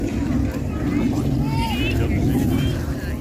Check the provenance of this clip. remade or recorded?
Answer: recorded